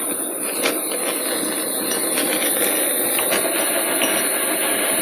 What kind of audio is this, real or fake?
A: real